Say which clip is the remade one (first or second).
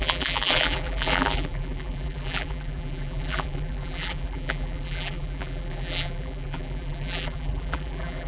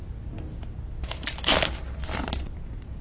first